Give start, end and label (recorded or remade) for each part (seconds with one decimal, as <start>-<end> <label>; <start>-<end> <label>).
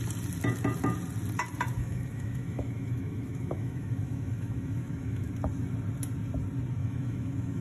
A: 0.0-1.7 recorded; 1.7-5.3 remade; 5.3-6.8 recorded; 6.8-7.6 remade